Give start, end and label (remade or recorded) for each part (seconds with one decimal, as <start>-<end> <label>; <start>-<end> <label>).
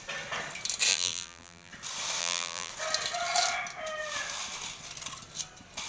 0.0-0.9 recorded; 0.9-1.7 remade; 1.7-2.2 recorded; 2.2-2.7 remade; 2.7-5.9 recorded